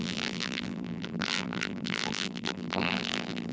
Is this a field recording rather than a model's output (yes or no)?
no